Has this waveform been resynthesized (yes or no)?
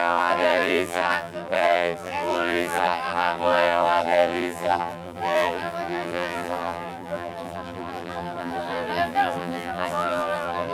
yes